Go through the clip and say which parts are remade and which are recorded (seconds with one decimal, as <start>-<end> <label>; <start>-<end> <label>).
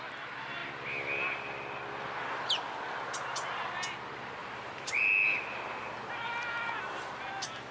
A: 0.0-4.4 recorded; 4.4-5.0 remade; 5.0-7.7 recorded